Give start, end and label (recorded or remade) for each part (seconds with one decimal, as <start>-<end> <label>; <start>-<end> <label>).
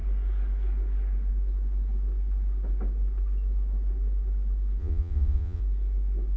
0.0-4.8 recorded; 4.8-5.6 remade; 5.6-6.4 recorded